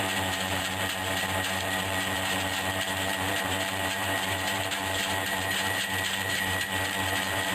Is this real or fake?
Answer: fake